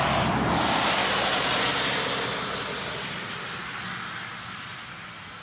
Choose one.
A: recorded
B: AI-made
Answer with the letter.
A